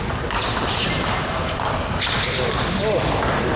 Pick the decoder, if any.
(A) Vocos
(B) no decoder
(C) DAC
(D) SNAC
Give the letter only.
B